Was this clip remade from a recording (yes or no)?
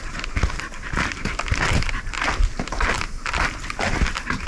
no